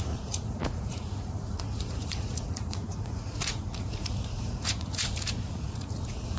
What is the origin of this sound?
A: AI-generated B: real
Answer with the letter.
A